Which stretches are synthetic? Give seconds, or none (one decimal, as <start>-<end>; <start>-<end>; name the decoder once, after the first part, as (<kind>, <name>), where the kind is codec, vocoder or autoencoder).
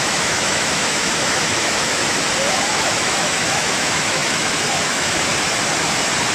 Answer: 0.0-2.0 (autoencoder, DAC-VAE); 2.5-5.3